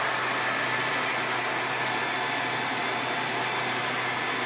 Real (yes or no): yes